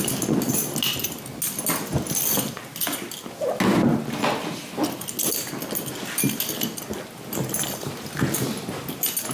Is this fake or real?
real